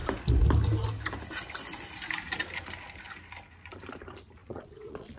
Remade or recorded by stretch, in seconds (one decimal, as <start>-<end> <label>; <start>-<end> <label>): 0.0-4.4 recorded; 4.4-5.2 remade